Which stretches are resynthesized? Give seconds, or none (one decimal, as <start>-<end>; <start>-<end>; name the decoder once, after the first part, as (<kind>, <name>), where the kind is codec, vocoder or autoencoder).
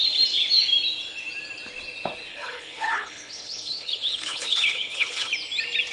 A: 2.3-5.3 (codec, HILCodec)